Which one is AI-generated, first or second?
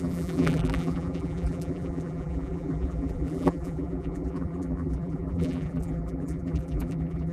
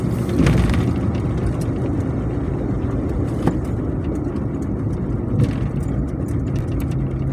first